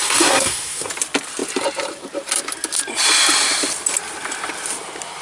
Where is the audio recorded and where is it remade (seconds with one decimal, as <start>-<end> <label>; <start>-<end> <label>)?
0.0-0.9 remade; 0.9-5.2 recorded